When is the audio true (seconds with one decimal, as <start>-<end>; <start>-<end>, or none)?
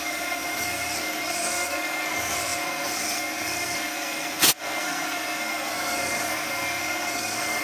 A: none